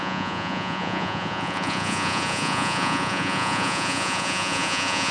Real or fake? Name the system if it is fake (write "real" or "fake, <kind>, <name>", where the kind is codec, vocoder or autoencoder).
fake, vocoder, Vocos